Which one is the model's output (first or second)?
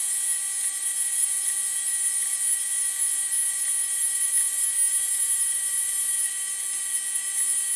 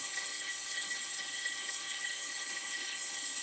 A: second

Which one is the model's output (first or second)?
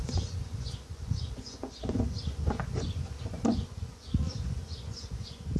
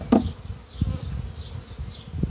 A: first